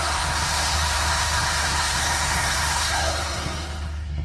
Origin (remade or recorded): remade